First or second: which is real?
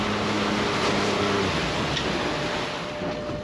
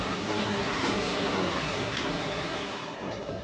first